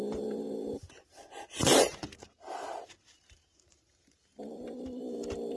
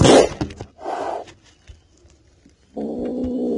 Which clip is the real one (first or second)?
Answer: second